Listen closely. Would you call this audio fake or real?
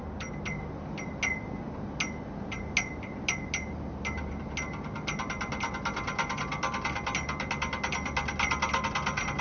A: real